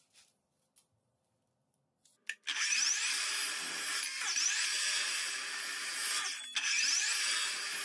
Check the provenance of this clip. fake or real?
real